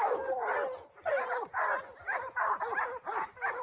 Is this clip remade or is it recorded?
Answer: recorded